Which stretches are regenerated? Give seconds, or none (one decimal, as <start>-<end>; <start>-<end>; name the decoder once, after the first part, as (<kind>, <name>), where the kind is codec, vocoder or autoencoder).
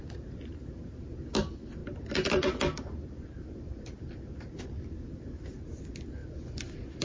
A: none